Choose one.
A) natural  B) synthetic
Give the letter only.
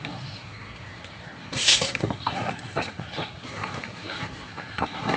B